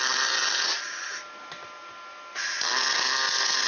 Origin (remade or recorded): recorded